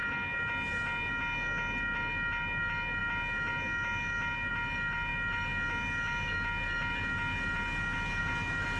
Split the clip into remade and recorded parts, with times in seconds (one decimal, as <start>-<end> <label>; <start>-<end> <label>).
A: 0.0-8.8 recorded